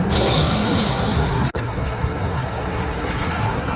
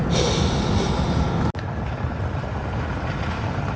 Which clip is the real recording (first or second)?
second